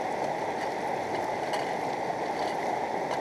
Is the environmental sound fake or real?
real